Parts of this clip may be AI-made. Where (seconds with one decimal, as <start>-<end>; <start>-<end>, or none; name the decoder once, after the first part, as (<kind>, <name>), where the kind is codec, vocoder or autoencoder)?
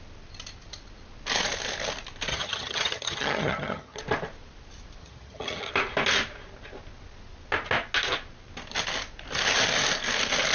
2.3-4.0 (vocoder, HiFi-GAN); 5.0-5.7